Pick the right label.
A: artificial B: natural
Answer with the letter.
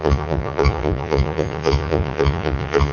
A